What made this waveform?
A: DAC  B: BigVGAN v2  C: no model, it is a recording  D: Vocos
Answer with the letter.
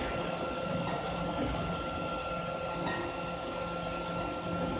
C